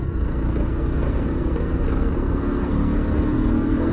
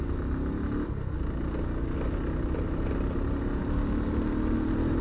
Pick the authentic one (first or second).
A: second